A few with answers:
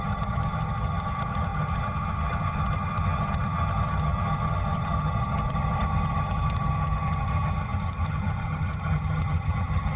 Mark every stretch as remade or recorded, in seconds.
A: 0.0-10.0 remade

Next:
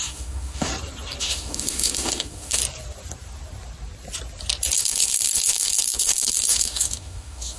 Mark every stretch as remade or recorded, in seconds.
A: 0.0-0.7 remade; 0.7-1.2 recorded; 1.2-2.6 remade; 2.6-4.8 recorded; 4.8-7.6 remade

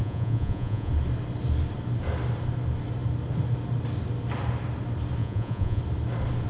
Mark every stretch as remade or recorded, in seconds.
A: 0.0-0.9 remade; 0.9-5.2 recorded; 5.2-5.8 remade; 5.8-6.5 recorded

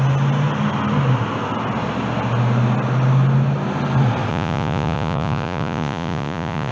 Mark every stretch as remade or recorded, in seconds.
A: 0.0-4.3 recorded; 4.3-6.7 remade